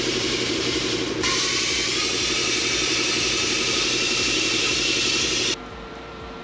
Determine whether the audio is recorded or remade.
remade